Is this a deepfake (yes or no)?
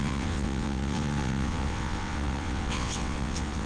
yes